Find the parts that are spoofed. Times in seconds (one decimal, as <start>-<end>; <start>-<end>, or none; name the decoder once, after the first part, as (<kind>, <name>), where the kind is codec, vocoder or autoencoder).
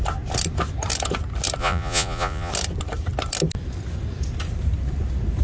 1.6-2.5 (vocoder, Vocos)